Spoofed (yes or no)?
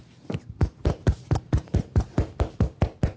no